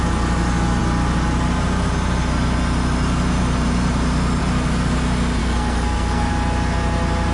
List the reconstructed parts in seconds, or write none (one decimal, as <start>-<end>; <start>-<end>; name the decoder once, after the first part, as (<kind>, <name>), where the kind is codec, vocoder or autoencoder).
5.4-6.3 (codec, SNAC)